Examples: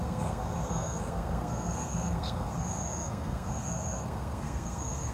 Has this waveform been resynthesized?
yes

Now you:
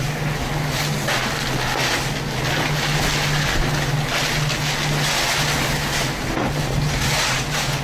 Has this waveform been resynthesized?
no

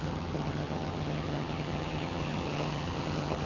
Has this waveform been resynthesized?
yes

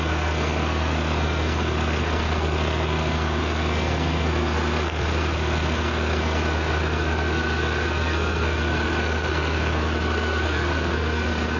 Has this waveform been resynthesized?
yes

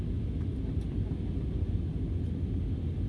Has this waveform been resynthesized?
no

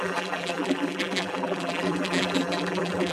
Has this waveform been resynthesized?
yes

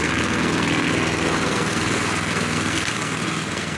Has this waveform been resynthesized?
yes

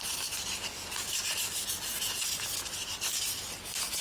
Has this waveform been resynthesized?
no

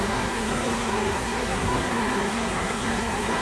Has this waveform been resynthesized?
yes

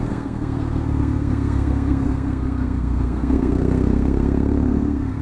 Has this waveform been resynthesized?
yes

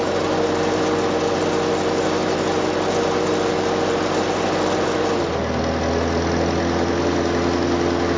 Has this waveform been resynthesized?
no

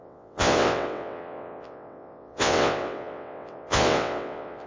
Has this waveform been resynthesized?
yes